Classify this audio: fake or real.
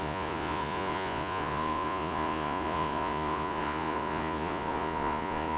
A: fake